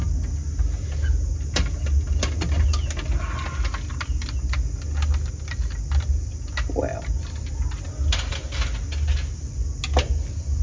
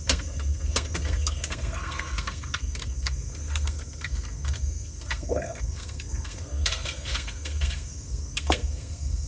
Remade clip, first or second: second